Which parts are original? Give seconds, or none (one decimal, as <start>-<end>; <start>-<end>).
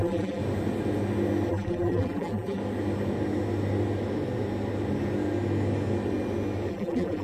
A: 0.4-1.5; 2.6-6.7